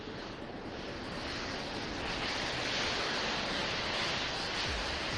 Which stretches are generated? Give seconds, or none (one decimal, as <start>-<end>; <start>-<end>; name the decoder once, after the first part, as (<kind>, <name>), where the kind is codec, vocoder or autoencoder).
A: none